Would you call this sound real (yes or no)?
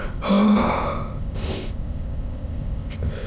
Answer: no